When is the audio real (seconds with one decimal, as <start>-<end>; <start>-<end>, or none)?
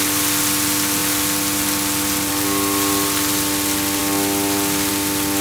0.0-5.4